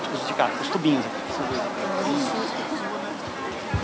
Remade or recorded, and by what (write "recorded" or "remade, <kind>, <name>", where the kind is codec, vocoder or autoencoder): recorded